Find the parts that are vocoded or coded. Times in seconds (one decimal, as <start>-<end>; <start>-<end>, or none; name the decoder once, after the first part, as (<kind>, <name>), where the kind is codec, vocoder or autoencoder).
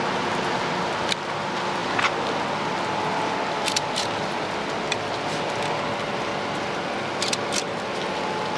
none